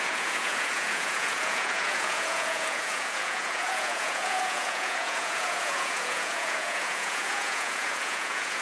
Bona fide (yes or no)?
no